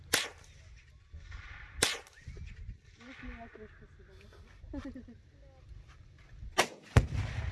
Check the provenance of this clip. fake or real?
real